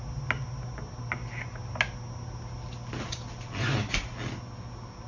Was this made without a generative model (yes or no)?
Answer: yes